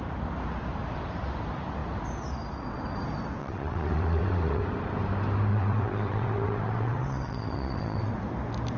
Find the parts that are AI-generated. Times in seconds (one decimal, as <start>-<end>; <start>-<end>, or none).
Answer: 3.4-4.6; 5.5-8.1